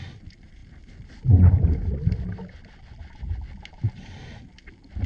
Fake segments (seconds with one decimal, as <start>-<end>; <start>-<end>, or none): none